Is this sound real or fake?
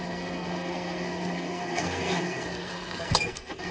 fake